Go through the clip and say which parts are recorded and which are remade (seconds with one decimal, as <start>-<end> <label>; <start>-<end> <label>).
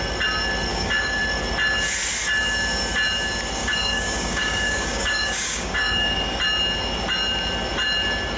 0.0-0.7 recorded; 0.7-1.2 remade; 1.2-3.6 recorded; 3.6-6.4 remade; 6.4-8.4 recorded